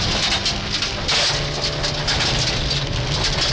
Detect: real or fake real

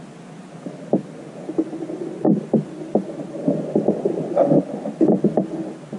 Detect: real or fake real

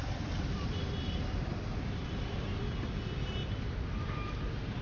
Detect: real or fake fake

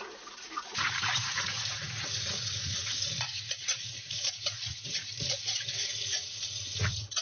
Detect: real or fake fake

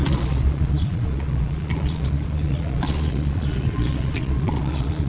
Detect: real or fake fake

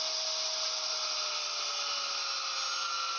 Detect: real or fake real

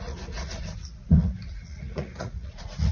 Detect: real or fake fake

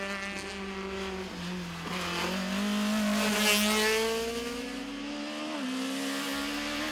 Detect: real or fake real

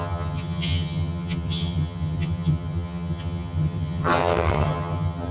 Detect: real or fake fake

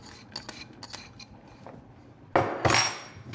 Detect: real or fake real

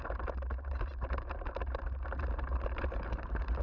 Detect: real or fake fake